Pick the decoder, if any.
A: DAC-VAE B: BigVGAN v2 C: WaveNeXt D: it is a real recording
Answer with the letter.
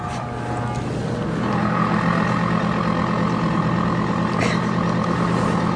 D